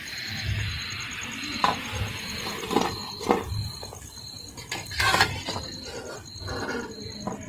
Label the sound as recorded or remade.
recorded